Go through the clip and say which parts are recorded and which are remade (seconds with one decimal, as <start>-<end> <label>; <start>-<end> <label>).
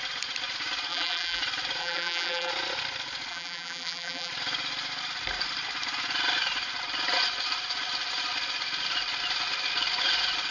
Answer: 0.0-0.9 recorded; 0.9-1.4 remade; 1.4-1.8 recorded; 1.8-2.5 remade; 2.5-3.3 recorded; 3.3-4.3 remade; 4.3-10.5 recorded